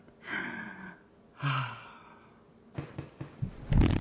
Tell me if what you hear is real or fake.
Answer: real